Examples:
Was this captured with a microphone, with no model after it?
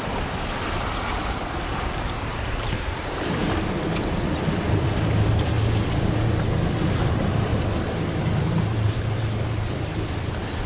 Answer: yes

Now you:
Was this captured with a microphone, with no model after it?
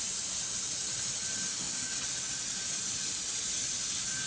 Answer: yes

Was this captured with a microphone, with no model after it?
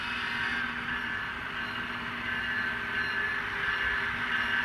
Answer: yes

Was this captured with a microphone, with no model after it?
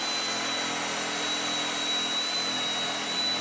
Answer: yes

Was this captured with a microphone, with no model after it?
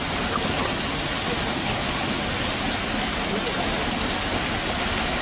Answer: yes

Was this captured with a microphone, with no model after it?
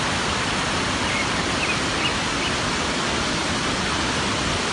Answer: yes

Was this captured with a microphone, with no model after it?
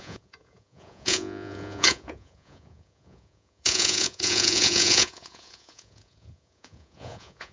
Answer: no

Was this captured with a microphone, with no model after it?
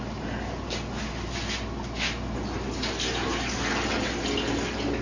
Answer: yes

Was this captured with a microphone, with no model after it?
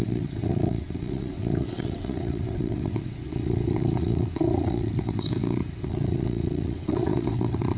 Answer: no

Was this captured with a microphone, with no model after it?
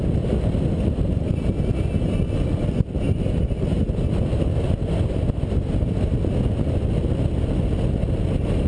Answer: yes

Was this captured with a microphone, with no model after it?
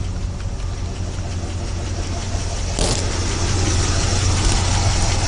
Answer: yes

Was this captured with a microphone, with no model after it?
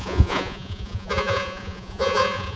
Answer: no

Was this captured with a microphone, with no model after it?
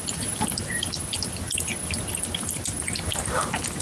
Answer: yes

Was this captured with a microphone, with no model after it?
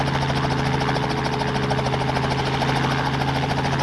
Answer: yes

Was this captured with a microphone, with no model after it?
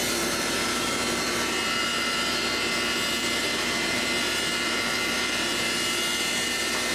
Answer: no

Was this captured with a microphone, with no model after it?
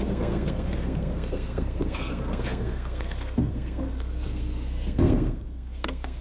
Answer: no